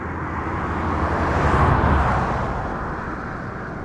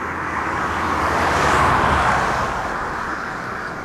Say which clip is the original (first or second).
first